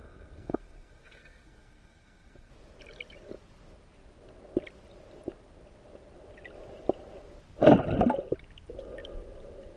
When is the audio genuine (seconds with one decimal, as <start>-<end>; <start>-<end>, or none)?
2.5-9.8